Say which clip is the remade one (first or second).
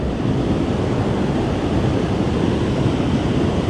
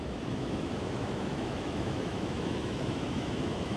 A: second